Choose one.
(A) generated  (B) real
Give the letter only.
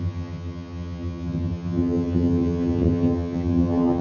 A